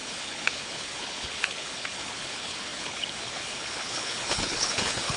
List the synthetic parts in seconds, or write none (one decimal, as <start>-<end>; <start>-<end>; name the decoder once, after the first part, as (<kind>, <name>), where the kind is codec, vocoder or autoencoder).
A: 0.0-5.2 (codec, HILCodec)